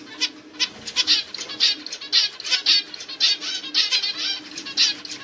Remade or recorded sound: recorded